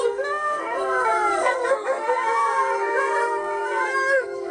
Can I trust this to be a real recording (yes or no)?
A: no